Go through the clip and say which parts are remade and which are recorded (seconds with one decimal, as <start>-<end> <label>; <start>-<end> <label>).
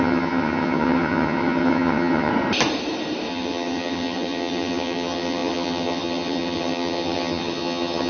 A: 0.0-2.3 remade; 2.3-3.3 recorded; 3.3-8.1 remade